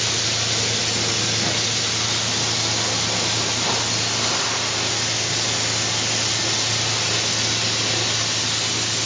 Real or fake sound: real